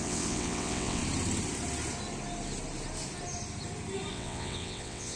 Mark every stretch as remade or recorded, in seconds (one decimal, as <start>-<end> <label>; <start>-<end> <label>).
0.0-1.0 remade; 1.0-4.1 recorded; 4.1-5.2 remade